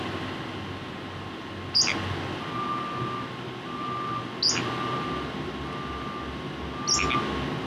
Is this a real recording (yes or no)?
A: yes